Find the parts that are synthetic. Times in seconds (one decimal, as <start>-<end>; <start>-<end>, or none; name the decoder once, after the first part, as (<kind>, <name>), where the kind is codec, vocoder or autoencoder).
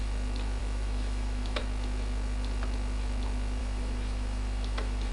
0.6-1.6 (autoencoder, DAC-VAE); 3.6-5.1